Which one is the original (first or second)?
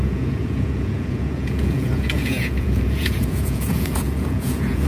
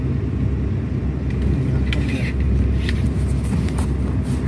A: second